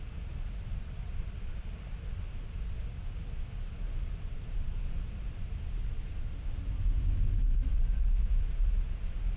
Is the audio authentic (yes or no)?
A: yes